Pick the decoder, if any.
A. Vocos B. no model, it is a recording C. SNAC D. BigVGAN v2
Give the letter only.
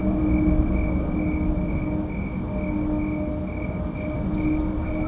B